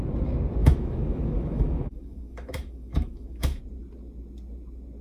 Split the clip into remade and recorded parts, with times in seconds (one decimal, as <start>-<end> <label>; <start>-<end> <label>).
0.0-0.6 recorded; 0.6-3.6 remade; 3.6-5.0 recorded